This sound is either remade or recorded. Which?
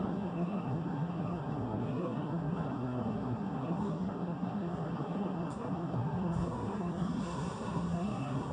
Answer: remade